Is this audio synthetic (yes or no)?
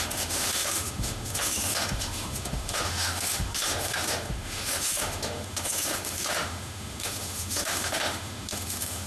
yes